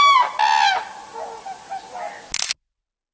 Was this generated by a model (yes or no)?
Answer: no